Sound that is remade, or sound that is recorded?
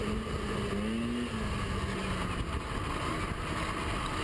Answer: recorded